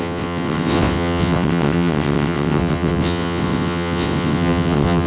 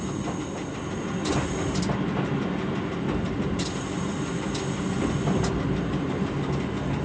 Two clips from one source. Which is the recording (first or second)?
second